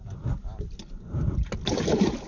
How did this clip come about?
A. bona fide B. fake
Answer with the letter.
A